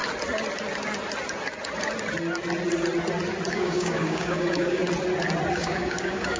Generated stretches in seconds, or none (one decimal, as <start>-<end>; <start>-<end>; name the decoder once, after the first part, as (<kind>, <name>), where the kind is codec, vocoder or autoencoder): 3.5-4.8 (codec, DAC); 5.5-6.4